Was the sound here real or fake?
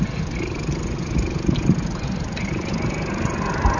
real